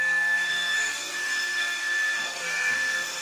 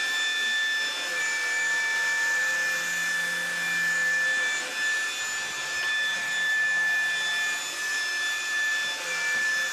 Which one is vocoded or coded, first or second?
first